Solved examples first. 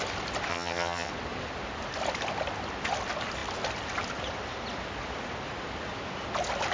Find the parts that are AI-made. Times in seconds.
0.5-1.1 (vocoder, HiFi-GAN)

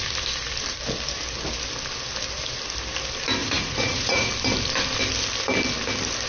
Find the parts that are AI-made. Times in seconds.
3.4-4.3 (vocoder, Vocos)

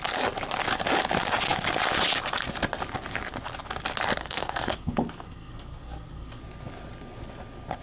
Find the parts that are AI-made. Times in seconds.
4.2-6.4 (codec, SNAC)

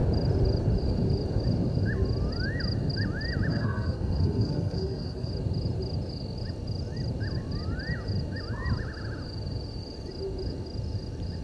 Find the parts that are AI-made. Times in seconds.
3.5-5.3 (codec, SNAC)

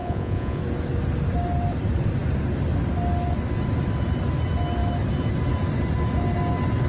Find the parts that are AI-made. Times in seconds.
0.0-0.6 (vocoder, Vocos)